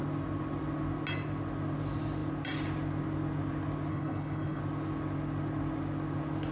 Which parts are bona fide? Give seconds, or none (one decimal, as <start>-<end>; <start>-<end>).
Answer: 0.0-3.9; 4.6-6.5